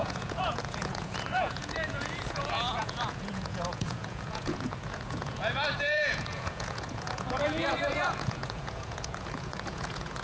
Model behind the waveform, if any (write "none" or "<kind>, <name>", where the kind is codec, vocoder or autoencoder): vocoder, Vocos